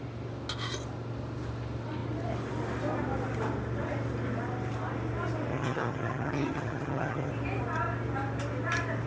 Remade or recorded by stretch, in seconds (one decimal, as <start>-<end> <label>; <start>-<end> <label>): 0.0-5.5 recorded; 5.5-7.3 remade; 7.3-9.1 recorded